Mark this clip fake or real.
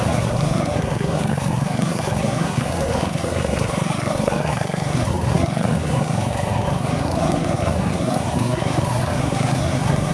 fake